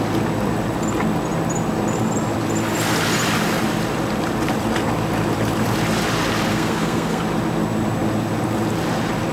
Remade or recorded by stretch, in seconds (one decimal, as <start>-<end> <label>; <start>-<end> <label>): 0.0-6.5 recorded; 6.5-7.2 remade; 7.2-9.3 recorded